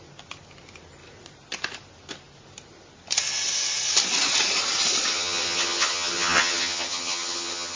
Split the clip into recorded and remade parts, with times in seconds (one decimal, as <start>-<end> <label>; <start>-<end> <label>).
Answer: 0.0-5.1 recorded; 5.1-7.8 remade